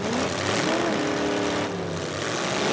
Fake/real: real